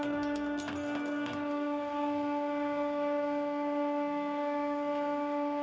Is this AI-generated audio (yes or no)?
yes